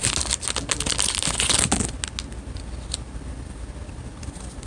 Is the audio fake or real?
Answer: real